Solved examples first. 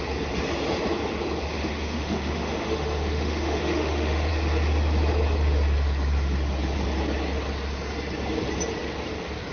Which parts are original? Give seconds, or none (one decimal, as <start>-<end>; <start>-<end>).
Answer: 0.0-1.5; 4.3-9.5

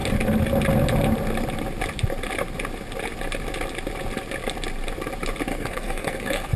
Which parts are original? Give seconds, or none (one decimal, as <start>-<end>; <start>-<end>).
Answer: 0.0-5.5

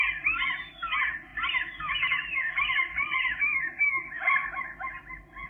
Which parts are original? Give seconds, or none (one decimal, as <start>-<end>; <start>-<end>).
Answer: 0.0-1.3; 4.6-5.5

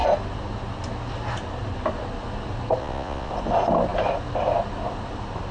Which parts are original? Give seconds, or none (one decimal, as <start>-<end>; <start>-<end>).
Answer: 0.0-2.8; 3.3-5.5

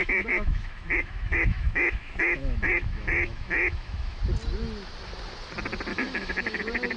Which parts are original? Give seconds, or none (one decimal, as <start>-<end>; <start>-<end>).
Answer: 4.2-5.9; 6.6-7.0

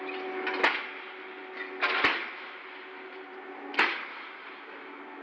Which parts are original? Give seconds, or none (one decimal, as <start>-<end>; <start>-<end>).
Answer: 0.0-5.2